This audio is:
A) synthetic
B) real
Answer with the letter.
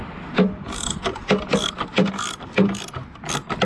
B